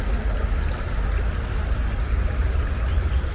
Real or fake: real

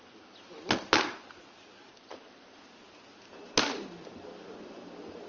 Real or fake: real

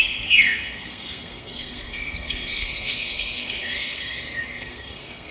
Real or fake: fake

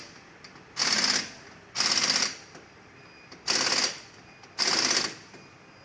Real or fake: real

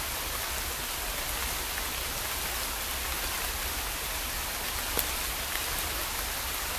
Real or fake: real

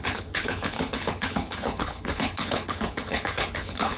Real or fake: fake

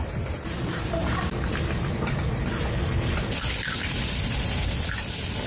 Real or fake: real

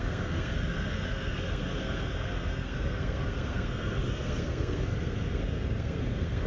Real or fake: fake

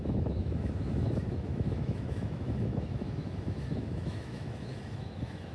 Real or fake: fake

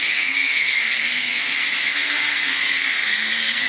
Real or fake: fake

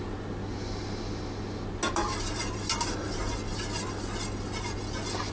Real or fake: real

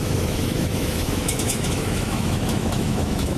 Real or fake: fake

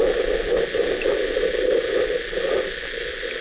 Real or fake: fake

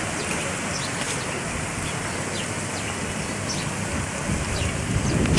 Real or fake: real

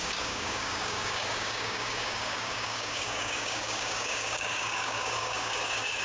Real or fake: fake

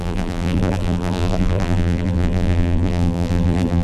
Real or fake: fake